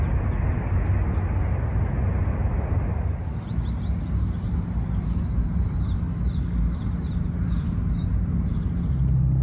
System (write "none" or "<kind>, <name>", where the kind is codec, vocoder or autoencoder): none